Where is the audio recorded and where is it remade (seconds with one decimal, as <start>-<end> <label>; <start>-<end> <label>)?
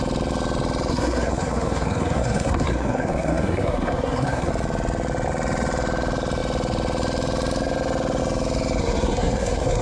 0.0-0.9 recorded; 0.9-4.5 remade; 4.5-8.8 recorded; 8.8-9.8 remade